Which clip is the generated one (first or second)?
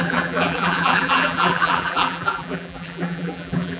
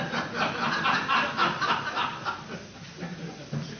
first